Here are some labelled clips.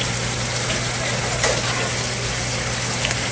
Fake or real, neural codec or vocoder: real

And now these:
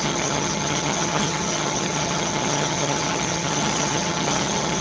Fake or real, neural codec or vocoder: fake, vocoder, HiFi-GAN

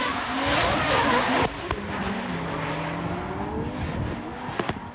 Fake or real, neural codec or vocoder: real